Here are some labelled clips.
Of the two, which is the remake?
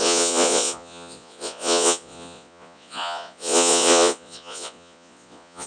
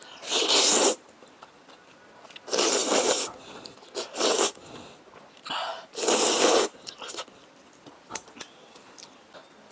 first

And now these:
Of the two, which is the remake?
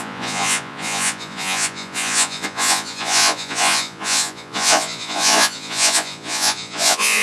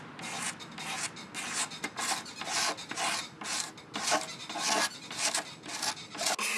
first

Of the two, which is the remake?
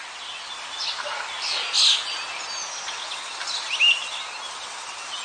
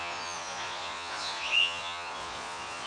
second